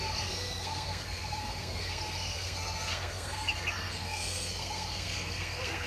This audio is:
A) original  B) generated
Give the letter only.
B